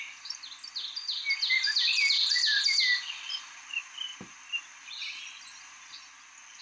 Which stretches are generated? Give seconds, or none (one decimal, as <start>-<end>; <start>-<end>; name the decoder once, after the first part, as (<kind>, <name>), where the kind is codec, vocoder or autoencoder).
none